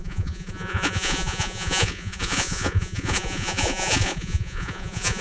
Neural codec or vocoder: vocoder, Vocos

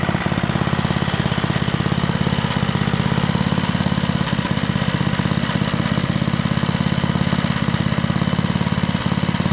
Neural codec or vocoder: none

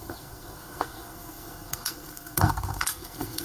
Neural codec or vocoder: codec, SNAC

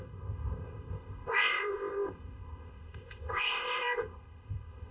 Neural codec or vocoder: codec, ZipCodec